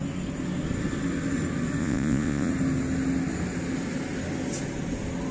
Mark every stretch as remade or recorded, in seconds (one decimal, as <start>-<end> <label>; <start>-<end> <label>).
0.0-1.8 recorded; 1.8-2.5 remade; 2.5-5.3 recorded